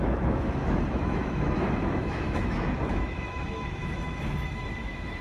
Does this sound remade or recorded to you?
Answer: remade